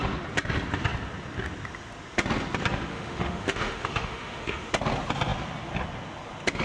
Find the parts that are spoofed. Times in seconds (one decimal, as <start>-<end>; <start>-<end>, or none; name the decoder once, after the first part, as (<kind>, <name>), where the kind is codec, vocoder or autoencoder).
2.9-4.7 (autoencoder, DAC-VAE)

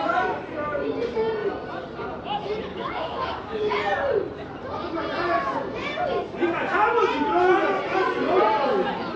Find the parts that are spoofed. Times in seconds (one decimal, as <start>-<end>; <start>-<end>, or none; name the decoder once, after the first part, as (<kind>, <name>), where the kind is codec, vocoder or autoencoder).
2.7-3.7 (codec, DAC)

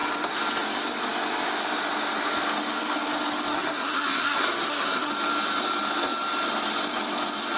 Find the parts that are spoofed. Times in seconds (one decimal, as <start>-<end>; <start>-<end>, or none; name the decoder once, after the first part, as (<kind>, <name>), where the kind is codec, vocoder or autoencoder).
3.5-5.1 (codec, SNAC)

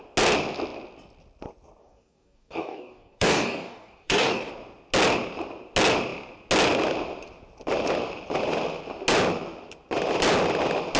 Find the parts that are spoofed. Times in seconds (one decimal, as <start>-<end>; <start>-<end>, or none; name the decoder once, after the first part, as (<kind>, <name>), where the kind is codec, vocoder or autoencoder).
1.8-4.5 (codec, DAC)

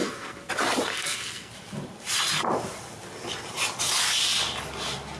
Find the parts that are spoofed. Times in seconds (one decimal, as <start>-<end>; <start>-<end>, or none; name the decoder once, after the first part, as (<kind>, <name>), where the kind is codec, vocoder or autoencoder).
0.0-0.5 (codec, SNAC); 0.9-1.5

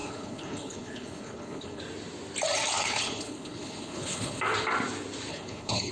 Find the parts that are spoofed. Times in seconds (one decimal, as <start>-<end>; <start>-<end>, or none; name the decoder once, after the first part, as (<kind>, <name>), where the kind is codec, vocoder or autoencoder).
0.0-1.8 (codec, HILCodec); 2.8-4.4; 5.3-5.9